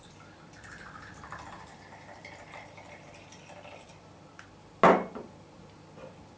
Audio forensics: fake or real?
real